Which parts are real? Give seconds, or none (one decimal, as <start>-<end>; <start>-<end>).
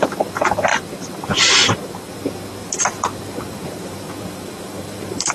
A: 0.0-0.7; 2.1-2.6